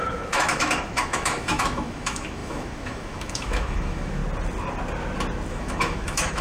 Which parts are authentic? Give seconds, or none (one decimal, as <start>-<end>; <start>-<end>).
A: 4.2-5.5